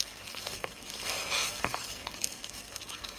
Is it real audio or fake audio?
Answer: fake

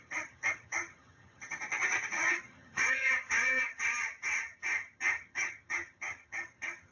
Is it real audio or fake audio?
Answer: fake